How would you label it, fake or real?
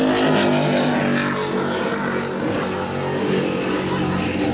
real